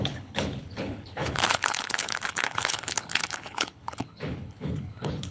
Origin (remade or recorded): remade